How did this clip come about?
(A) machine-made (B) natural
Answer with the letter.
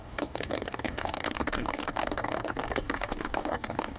A